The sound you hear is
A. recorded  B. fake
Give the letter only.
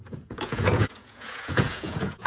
B